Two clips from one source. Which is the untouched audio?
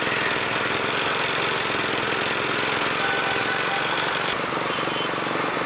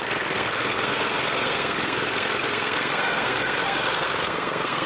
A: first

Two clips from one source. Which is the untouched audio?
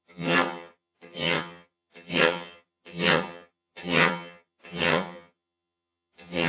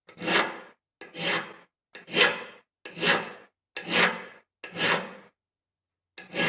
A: second